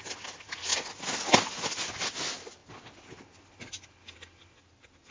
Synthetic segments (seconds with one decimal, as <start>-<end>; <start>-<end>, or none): none